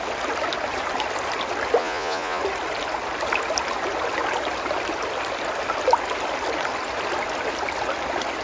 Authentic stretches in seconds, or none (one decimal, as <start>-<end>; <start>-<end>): 0.0-1.8; 2.4-8.4